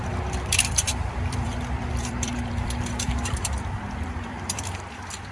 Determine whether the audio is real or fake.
fake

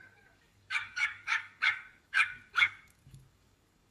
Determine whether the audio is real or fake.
fake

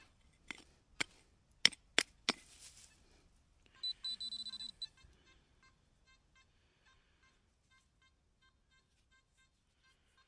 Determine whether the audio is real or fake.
real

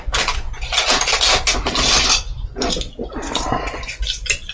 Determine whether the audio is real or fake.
real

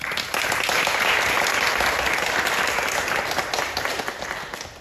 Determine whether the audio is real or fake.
real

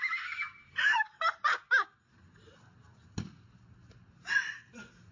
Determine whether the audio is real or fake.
real